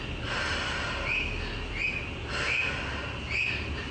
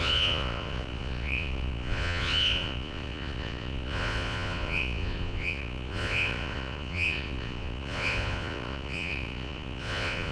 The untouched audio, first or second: first